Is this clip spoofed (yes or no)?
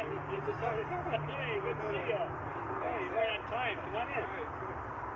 no